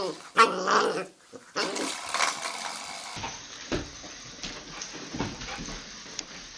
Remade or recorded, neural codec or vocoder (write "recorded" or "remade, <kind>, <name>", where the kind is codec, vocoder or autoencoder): recorded